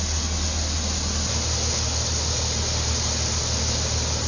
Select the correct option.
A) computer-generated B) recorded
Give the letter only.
B